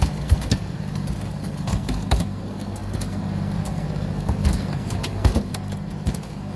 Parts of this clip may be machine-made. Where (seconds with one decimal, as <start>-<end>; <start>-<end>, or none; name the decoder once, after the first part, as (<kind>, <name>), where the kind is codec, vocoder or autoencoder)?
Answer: 0.0-6.6 (codec, SNAC)